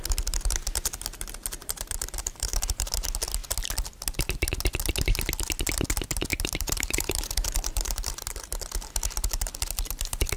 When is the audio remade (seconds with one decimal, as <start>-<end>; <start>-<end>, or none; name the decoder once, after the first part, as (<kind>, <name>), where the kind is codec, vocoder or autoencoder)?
1.6-2.9 (vocoder, BigVGAN v2); 6.3-8.1